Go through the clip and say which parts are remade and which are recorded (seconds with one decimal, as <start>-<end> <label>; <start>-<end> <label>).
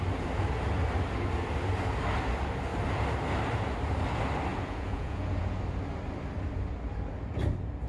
0.0-4.5 recorded; 4.5-5.6 remade; 5.6-7.9 recorded